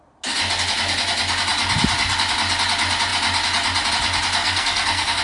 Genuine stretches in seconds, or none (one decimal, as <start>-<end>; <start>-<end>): 0.0-4.4